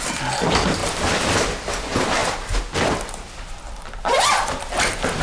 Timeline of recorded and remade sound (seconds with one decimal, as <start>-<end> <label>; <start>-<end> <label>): 0.0-5.2 recorded